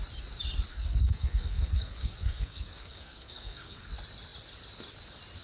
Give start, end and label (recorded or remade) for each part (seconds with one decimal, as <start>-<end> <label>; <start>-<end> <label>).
0.0-0.7 recorded; 0.7-3.9 remade; 3.9-5.4 recorded